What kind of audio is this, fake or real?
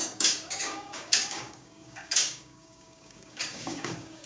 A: fake